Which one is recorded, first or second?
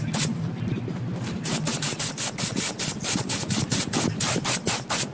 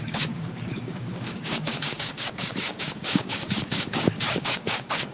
first